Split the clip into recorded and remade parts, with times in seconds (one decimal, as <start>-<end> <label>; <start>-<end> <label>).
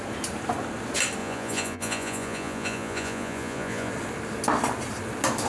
0.0-1.2 recorded; 1.2-3.9 remade; 3.9-5.5 recorded